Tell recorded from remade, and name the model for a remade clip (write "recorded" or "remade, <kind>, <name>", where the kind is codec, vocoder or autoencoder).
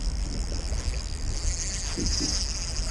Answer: recorded